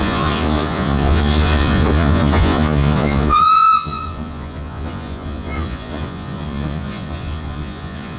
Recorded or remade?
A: remade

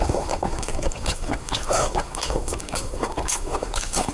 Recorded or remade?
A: remade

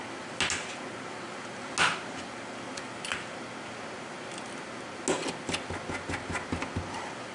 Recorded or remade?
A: recorded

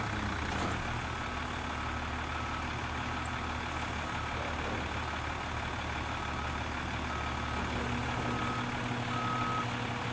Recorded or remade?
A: recorded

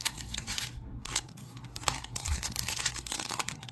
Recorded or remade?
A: remade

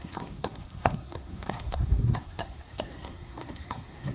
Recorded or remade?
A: remade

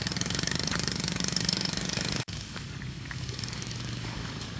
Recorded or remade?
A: remade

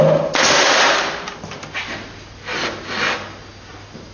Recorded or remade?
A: recorded